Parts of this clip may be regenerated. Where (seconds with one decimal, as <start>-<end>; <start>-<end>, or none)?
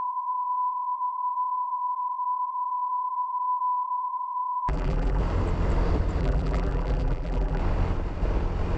0.0-5.2; 6.2-7.6